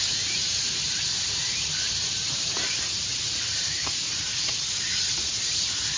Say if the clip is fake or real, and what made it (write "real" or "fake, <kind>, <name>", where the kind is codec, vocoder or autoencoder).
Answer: fake, vocoder, BigVGAN v2